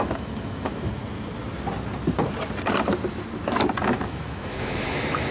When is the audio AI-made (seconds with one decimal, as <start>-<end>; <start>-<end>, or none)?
0.0-1.0; 3.8-5.3